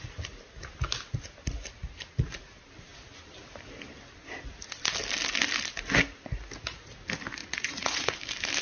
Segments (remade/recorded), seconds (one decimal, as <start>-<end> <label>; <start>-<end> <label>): 0.0-7.4 recorded; 7.4-8.1 remade; 8.1-8.6 recorded